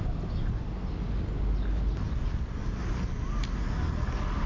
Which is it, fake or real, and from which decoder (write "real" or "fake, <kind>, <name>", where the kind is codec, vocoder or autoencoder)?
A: real